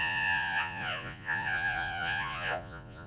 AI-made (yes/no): yes